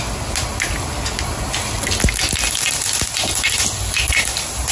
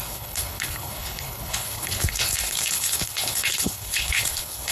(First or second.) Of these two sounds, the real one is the first